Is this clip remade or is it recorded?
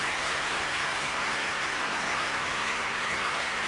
remade